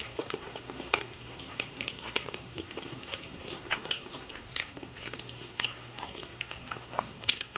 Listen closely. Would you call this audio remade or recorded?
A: remade